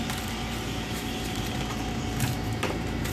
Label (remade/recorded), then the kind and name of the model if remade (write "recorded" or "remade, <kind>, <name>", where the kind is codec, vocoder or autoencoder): remade, vocoder, BigVGAN v2